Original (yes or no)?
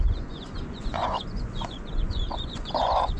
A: no